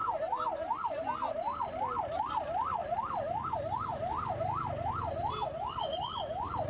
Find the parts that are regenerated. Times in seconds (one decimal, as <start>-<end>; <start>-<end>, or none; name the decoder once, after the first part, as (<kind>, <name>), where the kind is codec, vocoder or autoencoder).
none